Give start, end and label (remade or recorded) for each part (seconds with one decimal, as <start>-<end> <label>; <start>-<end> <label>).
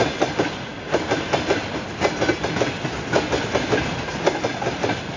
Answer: 0.0-5.2 recorded